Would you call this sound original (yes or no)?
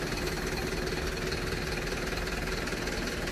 yes